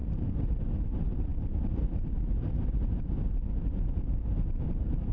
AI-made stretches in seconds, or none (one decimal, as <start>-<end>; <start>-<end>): 0.0-0.6